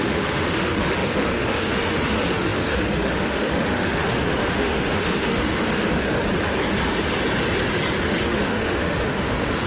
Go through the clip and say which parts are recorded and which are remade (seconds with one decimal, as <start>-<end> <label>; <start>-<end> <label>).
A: 0.0-6.2 remade; 6.2-8.0 recorded; 8.0-9.7 remade